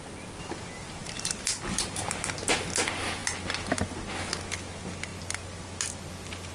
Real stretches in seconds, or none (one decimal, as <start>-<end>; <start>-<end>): 0.0-1.0; 2.1-6.5